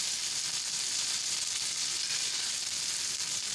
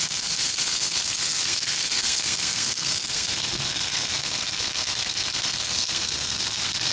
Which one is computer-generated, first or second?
second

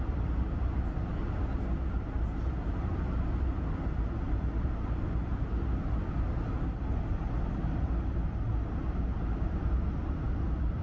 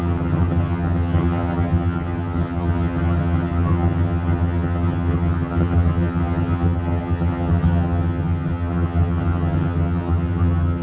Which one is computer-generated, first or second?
second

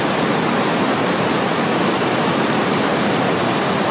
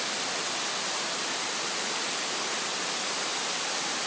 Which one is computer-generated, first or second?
first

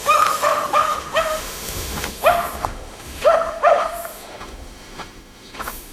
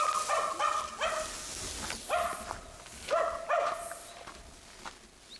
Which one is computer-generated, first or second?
first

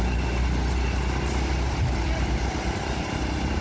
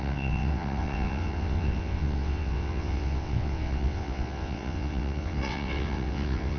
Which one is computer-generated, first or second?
second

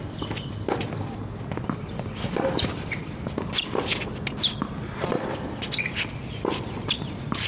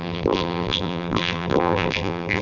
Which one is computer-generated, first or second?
second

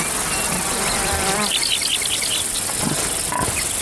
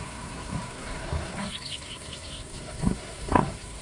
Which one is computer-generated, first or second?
second